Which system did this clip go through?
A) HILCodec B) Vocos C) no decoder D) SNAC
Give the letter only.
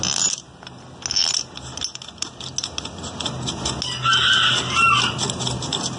C